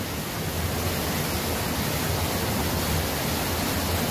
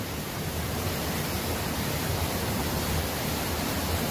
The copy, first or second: second